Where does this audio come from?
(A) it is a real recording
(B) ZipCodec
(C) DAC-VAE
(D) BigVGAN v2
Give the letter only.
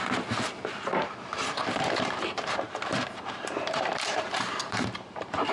D